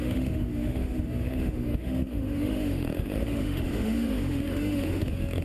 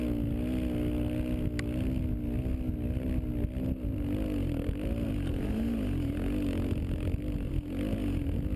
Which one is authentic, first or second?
second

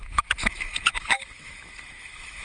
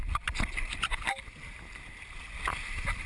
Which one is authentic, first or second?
second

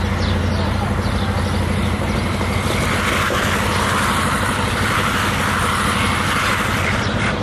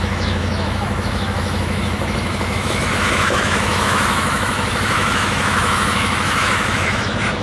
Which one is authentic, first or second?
first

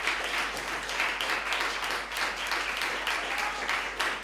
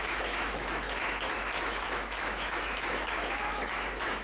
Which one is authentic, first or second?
first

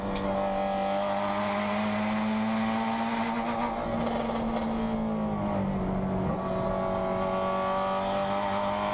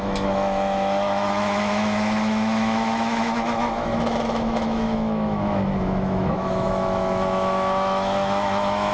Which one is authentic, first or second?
first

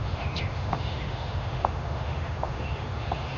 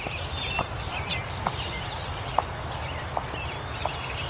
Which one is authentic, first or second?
second